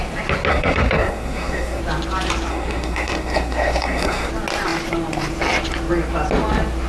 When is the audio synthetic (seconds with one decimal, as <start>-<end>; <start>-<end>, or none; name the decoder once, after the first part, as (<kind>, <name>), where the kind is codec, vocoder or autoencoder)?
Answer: 0.5-1.8 (codec, SNAC); 2.5-4.3